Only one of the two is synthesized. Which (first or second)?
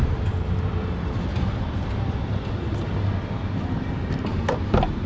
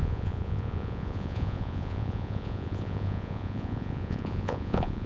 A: second